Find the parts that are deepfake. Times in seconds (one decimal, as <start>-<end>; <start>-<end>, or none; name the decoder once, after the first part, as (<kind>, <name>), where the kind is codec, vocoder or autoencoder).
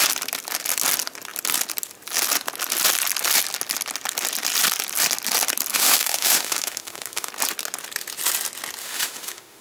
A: 5.7-7.3 (autoencoder, DAC-VAE); 8.8-9.6